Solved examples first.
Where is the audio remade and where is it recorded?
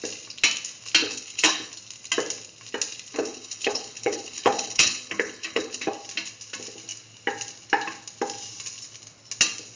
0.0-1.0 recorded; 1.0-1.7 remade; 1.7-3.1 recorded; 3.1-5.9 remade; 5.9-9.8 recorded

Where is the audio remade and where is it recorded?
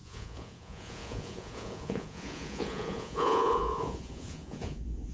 0.0-5.1 remade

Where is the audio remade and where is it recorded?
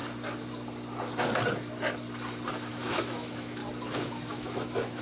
0.0-2.7 recorded; 2.7-3.6 remade; 3.6-4.3 recorded; 4.3-5.0 remade